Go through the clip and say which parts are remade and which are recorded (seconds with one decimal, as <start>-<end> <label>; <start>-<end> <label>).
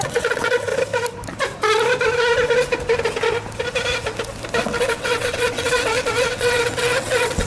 0.0-0.7 remade; 0.7-4.6 recorded; 4.6-7.5 remade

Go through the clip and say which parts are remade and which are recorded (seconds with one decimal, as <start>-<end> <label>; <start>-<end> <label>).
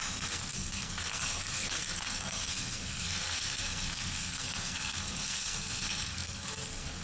0.0-7.0 remade